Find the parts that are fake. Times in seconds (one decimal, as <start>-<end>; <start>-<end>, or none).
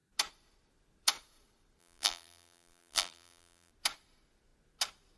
1.8-3.7